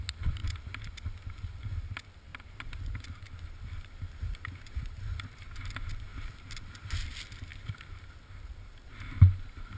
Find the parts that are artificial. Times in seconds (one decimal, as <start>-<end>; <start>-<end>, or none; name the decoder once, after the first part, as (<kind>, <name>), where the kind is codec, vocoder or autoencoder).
0.4-0.9 (vocoder, BigVGAN v2); 2.3-2.8